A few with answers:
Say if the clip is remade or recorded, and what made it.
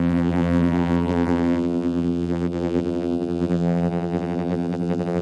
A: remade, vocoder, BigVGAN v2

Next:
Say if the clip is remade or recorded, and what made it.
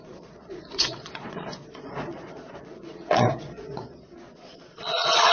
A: remade, vocoder, Vocos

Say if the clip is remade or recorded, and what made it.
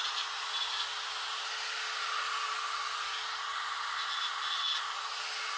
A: recorded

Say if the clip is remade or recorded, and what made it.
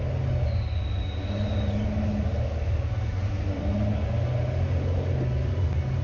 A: recorded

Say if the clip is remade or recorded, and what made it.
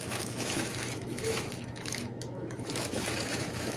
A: remade, autoencoder, DAC-VAE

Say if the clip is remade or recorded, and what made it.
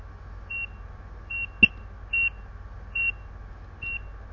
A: recorded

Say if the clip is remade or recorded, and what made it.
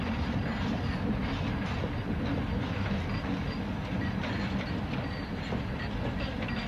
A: recorded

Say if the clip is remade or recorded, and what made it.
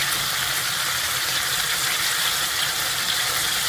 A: remade, vocoder, BigVGAN v2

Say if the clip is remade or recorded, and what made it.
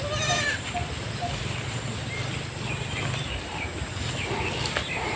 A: recorded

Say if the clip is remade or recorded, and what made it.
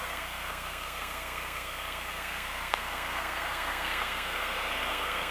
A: remade, codec, SNAC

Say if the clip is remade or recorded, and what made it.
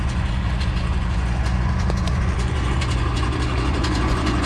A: remade, vocoder, Vocos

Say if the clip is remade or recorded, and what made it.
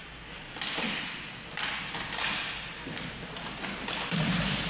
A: recorded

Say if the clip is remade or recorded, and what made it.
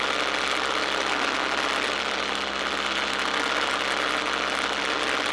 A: recorded